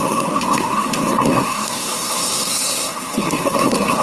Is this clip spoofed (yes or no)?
yes